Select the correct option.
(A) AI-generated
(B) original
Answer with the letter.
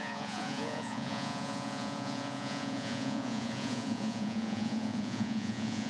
A